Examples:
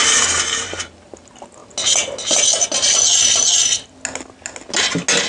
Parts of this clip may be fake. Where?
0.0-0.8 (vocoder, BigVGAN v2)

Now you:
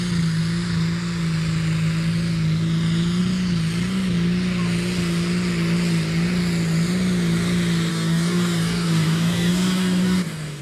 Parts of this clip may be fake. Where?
7.9-10.6 (codec, DAC)